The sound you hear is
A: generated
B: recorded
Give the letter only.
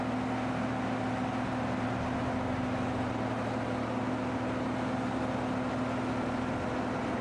B